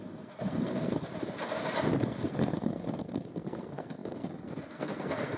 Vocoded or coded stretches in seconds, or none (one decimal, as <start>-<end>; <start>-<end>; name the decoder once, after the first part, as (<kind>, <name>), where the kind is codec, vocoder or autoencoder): 0.0-1.1 (codec, SNAC); 2.0-5.4